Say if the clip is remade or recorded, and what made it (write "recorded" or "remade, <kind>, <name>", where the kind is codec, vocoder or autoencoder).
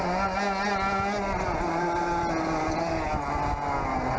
recorded